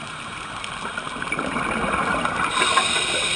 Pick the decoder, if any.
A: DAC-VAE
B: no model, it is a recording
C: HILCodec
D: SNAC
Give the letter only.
B